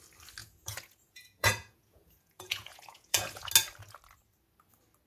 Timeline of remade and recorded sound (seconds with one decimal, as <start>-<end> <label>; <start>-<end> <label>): 0.0-0.4 recorded; 0.4-3.5 remade; 3.5-5.1 recorded